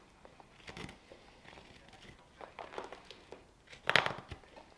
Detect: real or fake real